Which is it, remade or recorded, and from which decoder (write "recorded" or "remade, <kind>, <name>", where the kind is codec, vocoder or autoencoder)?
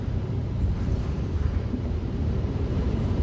remade, vocoder, BigVGAN v2